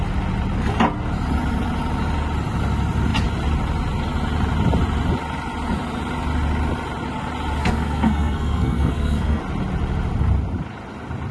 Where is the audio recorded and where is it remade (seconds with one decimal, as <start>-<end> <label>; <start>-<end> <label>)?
0.0-7.6 recorded; 7.6-9.4 remade; 9.4-11.3 recorded